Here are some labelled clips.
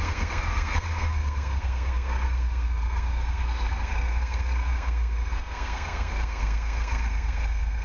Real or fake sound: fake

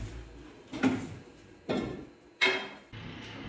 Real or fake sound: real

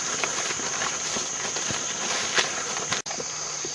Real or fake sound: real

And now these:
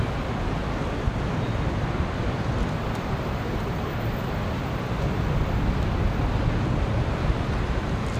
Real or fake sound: real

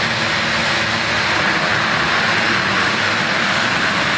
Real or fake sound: real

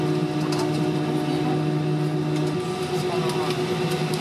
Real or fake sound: real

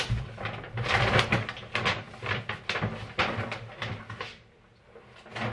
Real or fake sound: real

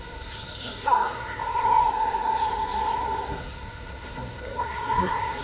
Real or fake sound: fake